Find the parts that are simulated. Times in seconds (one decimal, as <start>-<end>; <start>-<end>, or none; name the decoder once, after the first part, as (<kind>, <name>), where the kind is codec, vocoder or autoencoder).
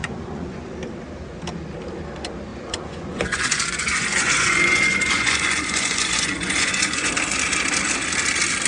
0.0-0.7 (vocoder, Vocos); 2.5-7.1